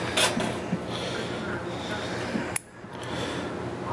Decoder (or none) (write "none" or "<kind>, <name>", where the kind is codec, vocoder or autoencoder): none